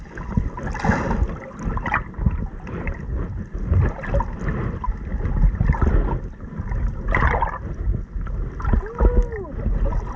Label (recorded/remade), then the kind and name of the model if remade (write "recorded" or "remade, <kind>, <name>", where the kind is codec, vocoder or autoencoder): recorded